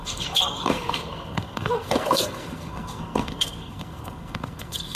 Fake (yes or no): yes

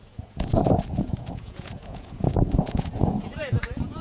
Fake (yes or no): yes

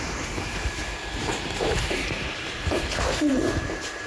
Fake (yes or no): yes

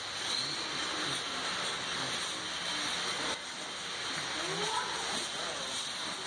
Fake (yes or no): no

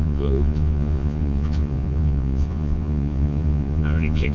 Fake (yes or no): yes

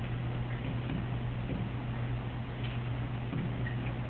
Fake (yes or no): no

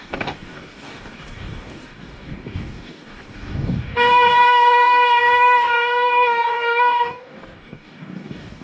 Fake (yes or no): yes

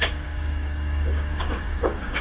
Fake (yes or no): yes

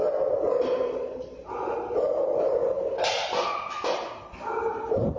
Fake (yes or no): no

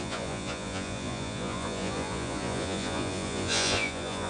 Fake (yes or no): yes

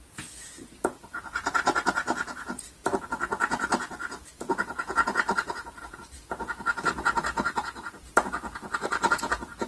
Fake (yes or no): yes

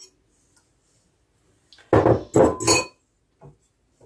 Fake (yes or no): no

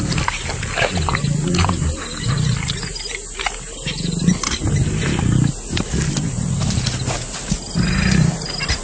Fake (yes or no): no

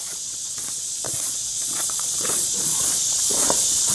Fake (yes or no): yes